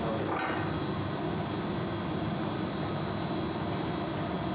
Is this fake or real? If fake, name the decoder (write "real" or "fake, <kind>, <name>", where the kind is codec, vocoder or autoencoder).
real